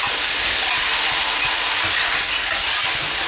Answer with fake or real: real